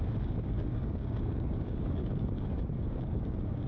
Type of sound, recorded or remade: remade